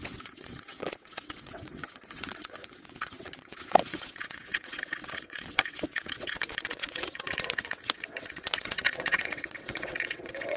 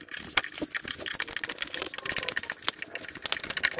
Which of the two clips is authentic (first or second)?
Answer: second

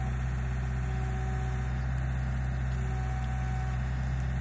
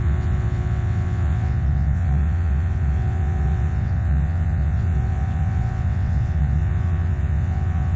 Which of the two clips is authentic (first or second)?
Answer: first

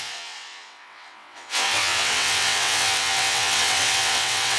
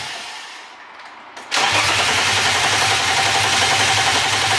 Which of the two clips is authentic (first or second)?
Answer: second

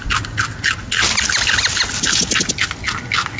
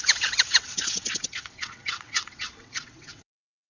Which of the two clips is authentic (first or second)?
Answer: first